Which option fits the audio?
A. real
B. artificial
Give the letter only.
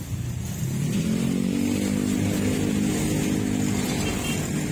A